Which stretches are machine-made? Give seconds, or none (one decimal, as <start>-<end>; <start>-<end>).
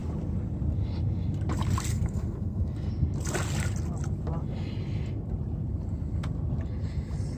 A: 1.9-2.9